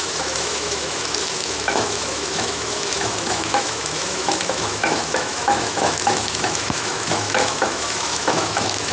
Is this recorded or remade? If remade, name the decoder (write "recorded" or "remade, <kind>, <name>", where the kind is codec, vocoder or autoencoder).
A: remade, autoencoder, DAC-VAE